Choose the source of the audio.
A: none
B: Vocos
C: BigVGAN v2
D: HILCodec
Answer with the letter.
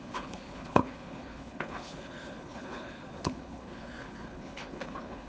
D